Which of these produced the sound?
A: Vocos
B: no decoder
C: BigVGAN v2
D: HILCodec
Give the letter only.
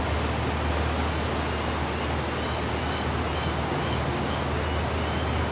B